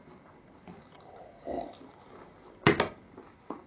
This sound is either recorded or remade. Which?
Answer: recorded